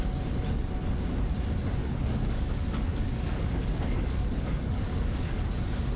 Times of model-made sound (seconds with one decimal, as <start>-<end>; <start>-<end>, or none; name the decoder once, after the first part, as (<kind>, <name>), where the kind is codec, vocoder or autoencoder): 1.8-5.4 (codec, DAC)